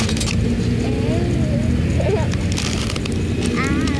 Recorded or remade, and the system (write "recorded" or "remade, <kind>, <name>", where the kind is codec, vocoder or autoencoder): recorded